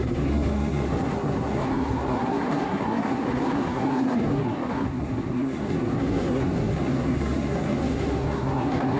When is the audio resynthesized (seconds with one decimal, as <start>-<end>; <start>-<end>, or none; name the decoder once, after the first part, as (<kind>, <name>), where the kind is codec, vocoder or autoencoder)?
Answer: 0.0-9.0 (codec, SNAC)